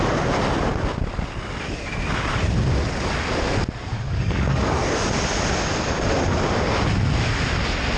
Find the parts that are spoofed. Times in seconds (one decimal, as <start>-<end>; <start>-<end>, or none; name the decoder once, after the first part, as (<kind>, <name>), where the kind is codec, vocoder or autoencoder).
3.9-4.8 (codec, DAC)